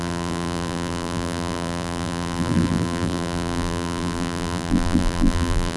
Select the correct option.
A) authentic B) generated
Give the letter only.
B